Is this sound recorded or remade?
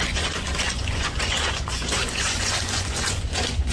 remade